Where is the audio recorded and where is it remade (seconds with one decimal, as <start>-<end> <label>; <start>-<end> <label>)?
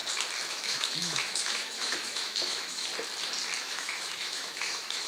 0.0-0.5 recorded; 0.5-2.9 remade; 2.9-3.6 recorded; 3.6-5.1 remade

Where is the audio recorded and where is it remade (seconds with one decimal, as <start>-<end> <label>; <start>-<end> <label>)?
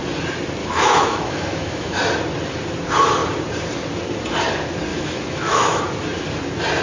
0.0-0.6 recorded; 0.6-2.0 remade; 2.0-4.9 recorded; 4.9-5.8 remade; 5.8-6.8 recorded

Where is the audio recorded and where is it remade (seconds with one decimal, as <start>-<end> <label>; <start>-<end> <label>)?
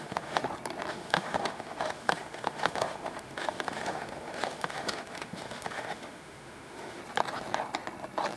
0.0-0.4 remade; 0.4-0.9 recorded; 0.9-7.0 remade; 7.0-8.4 recorded